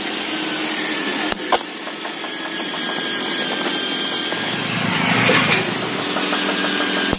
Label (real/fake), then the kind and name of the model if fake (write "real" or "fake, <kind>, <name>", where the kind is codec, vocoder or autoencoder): real